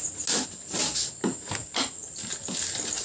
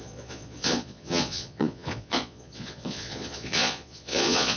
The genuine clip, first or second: first